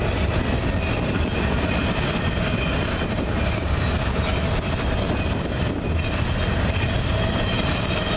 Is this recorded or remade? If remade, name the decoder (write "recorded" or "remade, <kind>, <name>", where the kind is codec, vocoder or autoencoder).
recorded